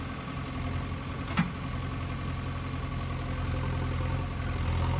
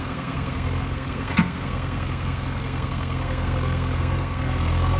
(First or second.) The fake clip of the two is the second